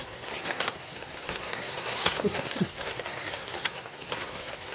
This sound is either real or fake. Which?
fake